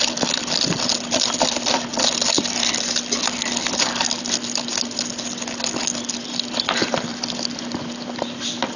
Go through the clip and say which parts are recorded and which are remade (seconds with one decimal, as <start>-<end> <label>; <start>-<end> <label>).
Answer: 0.0-8.8 recorded